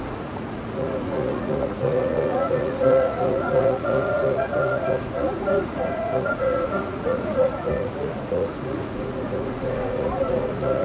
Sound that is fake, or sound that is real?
fake